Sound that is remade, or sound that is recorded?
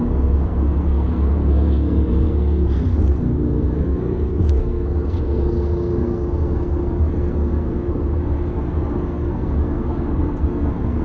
remade